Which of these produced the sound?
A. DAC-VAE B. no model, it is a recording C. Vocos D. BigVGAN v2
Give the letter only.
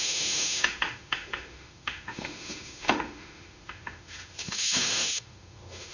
A